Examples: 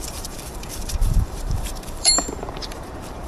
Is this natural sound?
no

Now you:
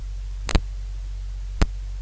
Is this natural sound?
yes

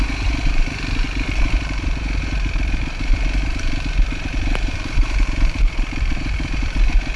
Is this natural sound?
no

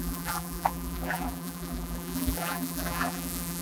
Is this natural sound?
no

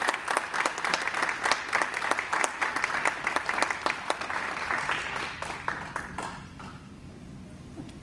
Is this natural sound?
yes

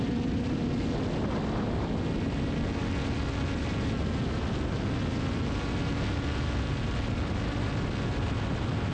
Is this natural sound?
yes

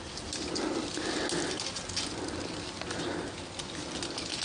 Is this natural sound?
yes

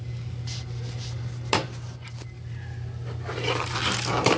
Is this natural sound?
no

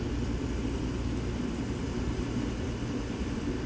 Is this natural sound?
yes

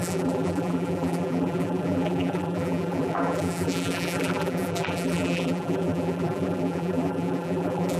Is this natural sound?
no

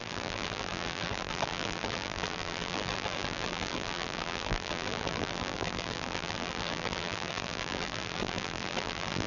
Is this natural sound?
no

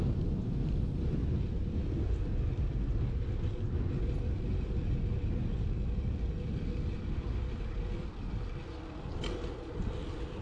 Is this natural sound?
yes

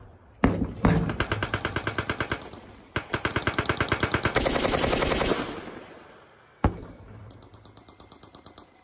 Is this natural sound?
no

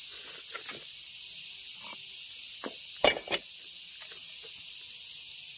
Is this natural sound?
yes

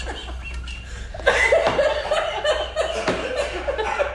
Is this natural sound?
yes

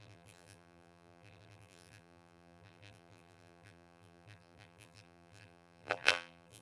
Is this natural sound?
no